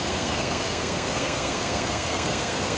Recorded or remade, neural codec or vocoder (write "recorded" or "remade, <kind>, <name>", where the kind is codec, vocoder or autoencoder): remade, codec, SNAC